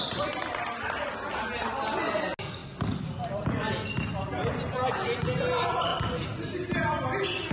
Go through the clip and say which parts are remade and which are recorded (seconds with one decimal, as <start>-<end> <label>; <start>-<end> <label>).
0.0-7.5 recorded